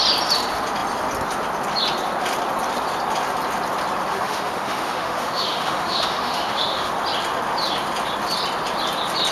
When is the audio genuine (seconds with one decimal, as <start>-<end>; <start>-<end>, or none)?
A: 0.0-4.1; 6.9-9.3